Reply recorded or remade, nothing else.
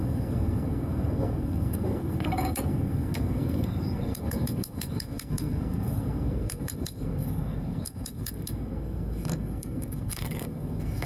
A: remade